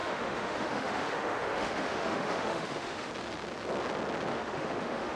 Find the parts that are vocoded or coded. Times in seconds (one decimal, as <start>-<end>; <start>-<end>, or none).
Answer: 0.0-3.1; 4.3-5.2